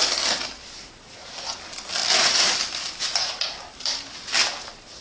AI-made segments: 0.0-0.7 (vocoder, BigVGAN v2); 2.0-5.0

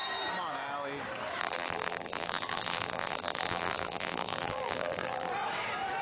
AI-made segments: 1.4-5.3 (vocoder, BigVGAN v2)